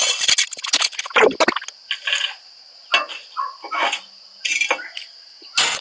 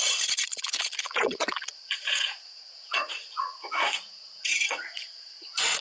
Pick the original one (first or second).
first